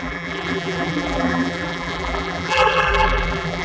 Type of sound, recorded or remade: remade